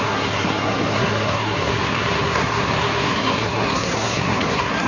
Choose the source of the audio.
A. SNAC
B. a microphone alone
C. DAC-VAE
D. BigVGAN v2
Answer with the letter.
A